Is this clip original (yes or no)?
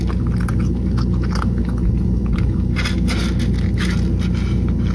yes